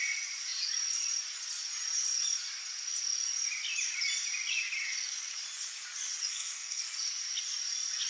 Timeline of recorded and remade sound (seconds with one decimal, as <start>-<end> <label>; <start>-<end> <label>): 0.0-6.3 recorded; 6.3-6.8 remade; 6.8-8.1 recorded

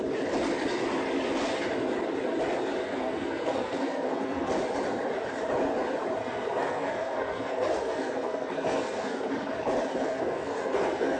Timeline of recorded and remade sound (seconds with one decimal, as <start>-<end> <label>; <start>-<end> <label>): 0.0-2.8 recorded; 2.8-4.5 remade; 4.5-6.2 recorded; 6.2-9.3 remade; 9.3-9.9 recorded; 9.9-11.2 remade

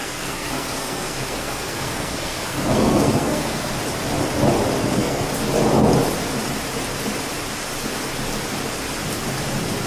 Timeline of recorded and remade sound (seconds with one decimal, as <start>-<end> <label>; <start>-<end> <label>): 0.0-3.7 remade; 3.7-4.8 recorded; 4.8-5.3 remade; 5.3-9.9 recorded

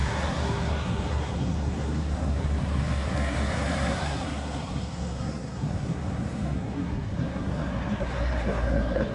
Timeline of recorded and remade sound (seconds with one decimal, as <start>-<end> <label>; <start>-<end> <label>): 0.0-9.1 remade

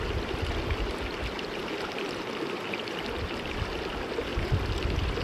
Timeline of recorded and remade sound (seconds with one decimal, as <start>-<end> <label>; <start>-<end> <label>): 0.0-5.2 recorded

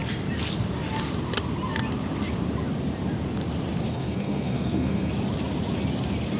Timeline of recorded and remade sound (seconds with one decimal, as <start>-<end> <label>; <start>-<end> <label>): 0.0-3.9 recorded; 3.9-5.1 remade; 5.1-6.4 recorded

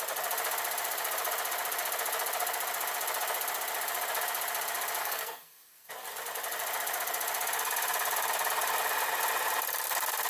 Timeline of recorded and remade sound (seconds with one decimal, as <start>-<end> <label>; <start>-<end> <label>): 0.0-5.0 recorded; 5.0-5.9 remade; 5.9-10.3 recorded